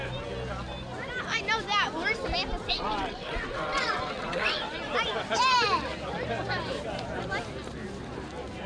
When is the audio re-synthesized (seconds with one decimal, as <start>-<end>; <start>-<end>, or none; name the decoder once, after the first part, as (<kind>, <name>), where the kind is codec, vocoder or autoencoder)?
2.7-4.6 (vocoder, WaveNeXt)